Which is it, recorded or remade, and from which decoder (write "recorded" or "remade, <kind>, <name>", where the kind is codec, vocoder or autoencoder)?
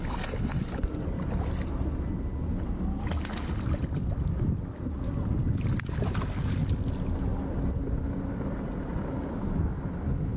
recorded